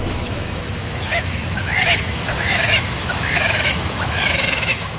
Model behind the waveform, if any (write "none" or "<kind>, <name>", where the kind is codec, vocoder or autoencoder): autoencoder, DAC-VAE